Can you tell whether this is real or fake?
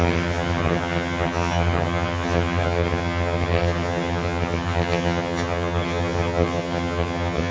fake